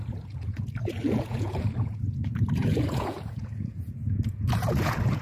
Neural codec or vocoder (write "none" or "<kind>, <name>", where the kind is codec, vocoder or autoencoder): vocoder, Vocos